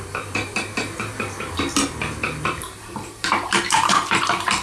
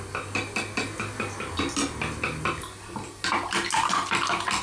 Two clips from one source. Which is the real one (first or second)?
second